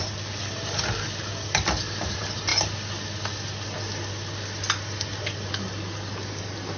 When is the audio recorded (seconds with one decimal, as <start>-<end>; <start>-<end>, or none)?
0.0-6.8

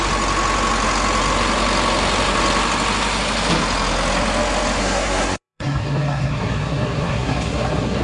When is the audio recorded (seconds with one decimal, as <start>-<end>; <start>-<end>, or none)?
0.0-4.8

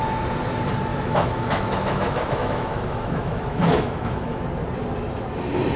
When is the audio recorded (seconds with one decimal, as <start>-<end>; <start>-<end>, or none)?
0.0-0.9; 4.4-5.8

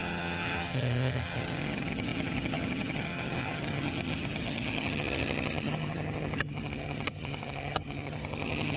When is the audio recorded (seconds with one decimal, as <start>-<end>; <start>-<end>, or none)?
none

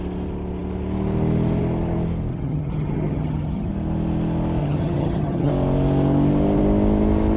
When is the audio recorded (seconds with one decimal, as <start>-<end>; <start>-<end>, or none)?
0.0-2.3; 3.7-4.6; 5.5-7.4

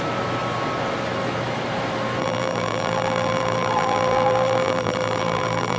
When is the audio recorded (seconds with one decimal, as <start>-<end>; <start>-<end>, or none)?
0.0-2.2